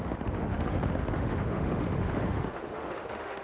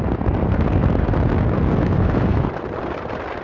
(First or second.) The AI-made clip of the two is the first